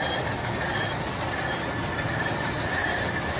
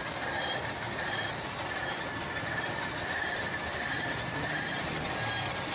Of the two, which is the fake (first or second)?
second